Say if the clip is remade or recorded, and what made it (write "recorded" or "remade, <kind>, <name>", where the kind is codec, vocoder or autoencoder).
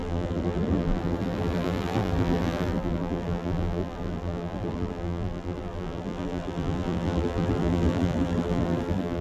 remade, vocoder, BigVGAN v2